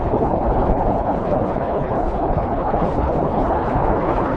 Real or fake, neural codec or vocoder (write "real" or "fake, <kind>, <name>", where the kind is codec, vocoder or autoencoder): fake, codec, HILCodec